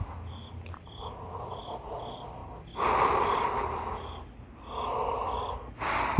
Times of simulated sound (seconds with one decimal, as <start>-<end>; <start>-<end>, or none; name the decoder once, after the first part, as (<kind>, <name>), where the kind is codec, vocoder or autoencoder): none